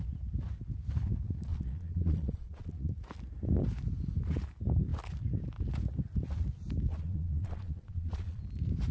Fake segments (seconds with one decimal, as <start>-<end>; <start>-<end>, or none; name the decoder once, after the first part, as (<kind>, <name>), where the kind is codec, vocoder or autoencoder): 1.5-2.9 (vocoder, Vocos); 6.9-8.4